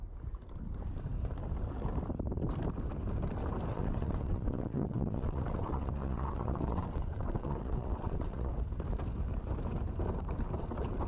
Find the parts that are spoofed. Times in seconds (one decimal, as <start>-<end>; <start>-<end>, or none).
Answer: 3.7-8.5